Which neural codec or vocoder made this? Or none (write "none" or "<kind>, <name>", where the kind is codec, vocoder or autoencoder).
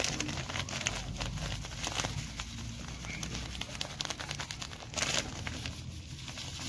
none